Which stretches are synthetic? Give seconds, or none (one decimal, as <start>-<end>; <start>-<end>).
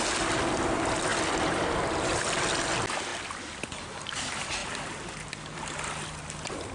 1.1-2.2; 3.1-3.7